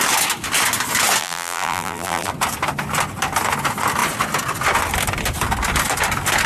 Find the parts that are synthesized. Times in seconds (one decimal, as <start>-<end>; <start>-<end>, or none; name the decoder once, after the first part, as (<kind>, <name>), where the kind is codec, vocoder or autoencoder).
1.2-2.3 (vocoder, BigVGAN v2)